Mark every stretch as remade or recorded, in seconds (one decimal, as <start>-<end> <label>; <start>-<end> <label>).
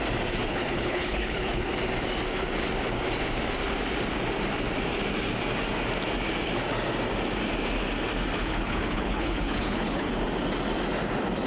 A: 0.0-0.5 recorded; 0.5-1.7 remade; 1.7-8.4 recorded; 8.4-10.1 remade; 10.1-11.5 recorded